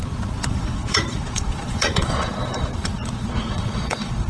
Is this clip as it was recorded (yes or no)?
no